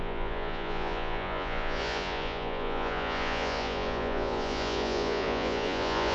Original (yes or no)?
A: no